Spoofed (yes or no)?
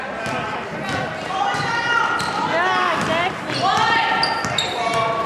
no